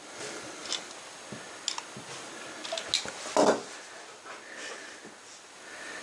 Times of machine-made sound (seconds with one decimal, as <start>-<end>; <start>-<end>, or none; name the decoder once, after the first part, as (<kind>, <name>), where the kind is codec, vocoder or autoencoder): none